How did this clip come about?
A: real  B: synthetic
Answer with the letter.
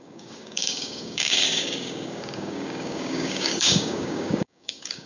B